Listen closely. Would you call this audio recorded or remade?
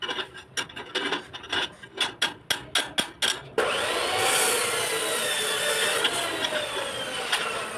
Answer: recorded